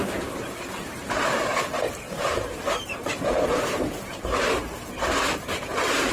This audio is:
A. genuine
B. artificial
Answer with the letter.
B